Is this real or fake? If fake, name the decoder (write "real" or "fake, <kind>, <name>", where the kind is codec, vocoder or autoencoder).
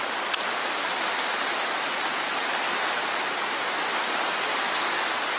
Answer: real